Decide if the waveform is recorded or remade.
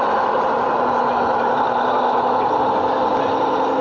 recorded